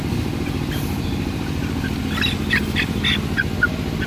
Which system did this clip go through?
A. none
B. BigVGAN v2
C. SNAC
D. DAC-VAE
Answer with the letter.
A